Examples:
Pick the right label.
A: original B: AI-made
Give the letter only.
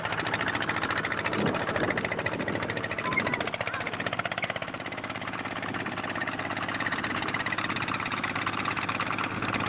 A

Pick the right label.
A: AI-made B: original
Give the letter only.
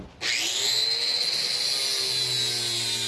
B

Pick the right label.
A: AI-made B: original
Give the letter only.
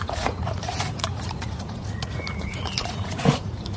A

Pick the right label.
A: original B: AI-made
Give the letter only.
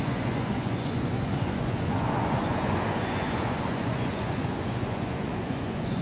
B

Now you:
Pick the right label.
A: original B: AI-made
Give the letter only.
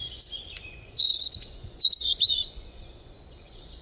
B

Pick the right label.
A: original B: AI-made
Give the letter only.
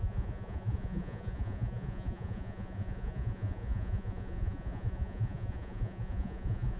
B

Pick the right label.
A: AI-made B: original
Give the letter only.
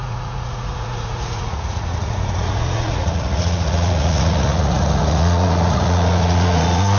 A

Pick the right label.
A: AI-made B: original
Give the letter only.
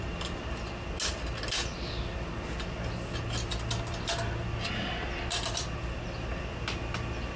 B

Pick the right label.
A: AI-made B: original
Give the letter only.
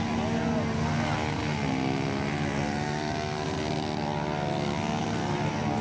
B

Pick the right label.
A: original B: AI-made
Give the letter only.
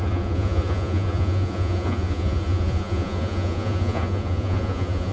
B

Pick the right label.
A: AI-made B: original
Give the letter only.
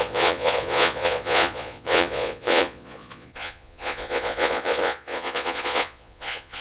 A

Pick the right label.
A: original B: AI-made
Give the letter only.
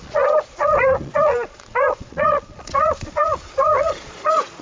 B